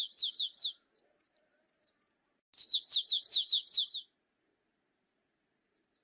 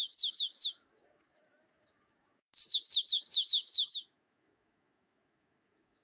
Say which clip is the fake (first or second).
second